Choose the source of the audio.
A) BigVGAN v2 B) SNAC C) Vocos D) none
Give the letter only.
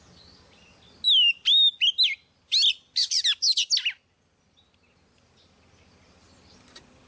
D